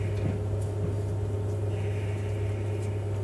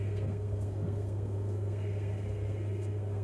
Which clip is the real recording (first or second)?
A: first